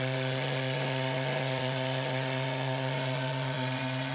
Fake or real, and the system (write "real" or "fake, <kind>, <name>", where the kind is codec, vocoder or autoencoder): fake, vocoder, Vocos